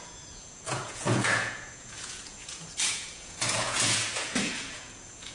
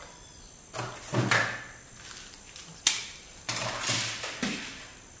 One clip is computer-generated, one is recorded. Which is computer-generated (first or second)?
first